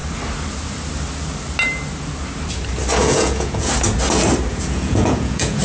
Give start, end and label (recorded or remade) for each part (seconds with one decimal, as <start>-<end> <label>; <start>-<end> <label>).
0.0-3.0 recorded; 3.0-3.7 remade; 3.7-4.5 recorded; 4.5-5.6 remade